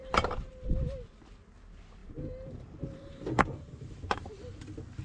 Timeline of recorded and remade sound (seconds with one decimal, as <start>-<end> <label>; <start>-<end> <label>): 0.0-0.5 remade; 0.5-2.0 recorded; 2.0-4.5 remade; 4.5-5.0 recorded